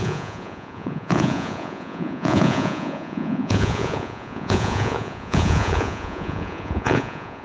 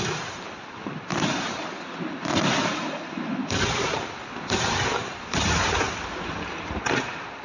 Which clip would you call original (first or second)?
second